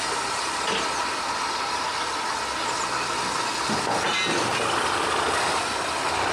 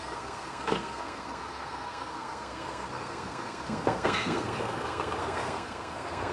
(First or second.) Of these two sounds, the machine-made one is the second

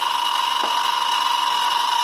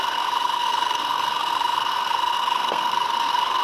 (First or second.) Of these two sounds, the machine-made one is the second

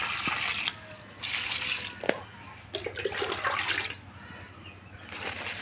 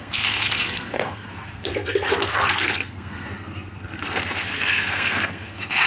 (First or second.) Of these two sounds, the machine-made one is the second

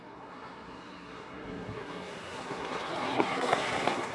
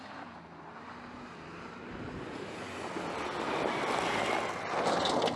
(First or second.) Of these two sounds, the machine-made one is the first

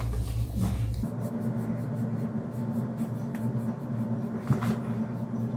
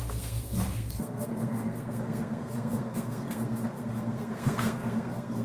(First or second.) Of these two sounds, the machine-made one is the second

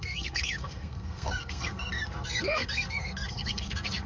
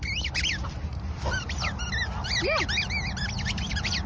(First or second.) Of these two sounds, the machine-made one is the first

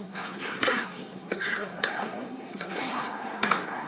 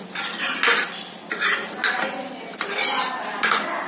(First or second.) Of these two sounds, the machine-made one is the first